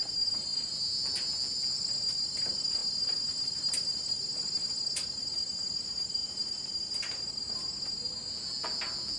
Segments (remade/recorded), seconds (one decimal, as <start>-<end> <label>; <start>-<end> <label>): 0.0-9.2 recorded